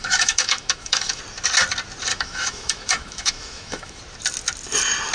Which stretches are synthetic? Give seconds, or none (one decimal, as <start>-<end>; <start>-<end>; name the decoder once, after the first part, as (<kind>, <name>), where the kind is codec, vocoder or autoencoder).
0.0-1.2 (autoencoder, DAC-VAE); 2.1-4.0